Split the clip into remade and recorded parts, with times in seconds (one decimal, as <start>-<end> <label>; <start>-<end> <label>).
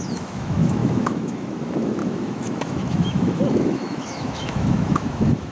0.0-5.5 remade